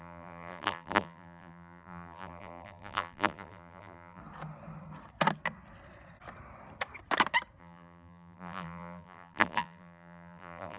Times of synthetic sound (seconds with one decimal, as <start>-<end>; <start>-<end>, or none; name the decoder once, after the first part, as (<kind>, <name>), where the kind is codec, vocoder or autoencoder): 0.0-4.2 (vocoder, BigVGAN v2); 7.6-10.8